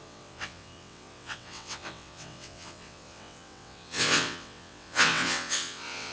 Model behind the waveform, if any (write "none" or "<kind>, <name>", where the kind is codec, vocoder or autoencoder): vocoder, WaveNeXt